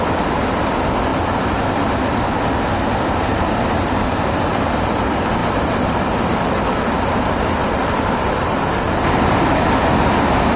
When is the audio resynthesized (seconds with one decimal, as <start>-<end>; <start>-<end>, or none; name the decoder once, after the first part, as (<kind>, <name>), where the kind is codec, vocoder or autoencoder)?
3.3-4.0 (vocoder, BigVGAN v2); 5.4-6.6; 7.6-8.8